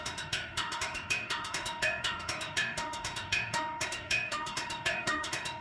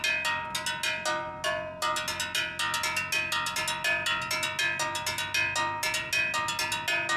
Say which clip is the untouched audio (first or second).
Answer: second